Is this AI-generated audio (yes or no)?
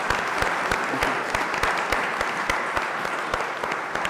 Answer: no